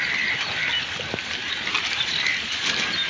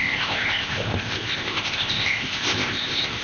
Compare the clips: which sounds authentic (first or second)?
first